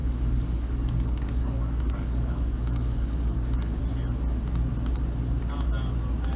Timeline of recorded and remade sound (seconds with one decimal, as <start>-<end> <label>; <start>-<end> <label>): 0.0-3.8 remade; 3.8-6.4 recorded